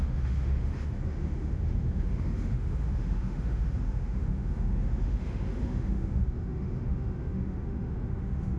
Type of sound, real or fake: fake